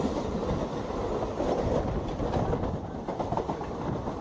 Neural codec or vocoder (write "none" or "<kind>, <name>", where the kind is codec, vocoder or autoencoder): none